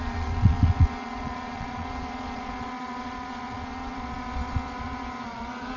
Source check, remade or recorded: remade